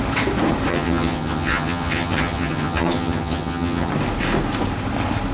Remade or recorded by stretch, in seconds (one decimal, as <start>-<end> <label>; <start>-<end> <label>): 0.0-0.7 recorded; 0.7-3.9 remade; 3.9-5.3 recorded